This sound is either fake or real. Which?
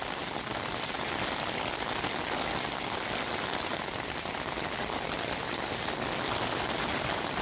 real